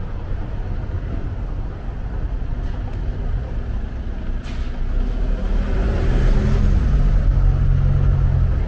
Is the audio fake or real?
real